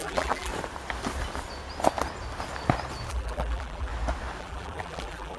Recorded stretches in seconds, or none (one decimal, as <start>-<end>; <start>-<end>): 0.5-3.1; 3.9-4.4